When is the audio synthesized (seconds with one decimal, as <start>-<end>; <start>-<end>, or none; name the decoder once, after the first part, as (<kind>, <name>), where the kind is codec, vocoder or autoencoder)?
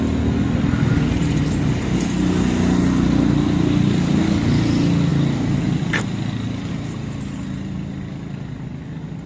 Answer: none